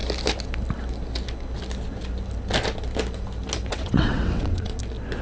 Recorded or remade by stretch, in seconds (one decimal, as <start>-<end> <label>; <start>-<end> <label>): 0.0-3.7 recorded; 3.7-4.8 remade; 4.8-5.2 recorded